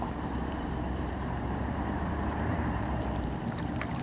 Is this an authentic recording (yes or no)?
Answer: no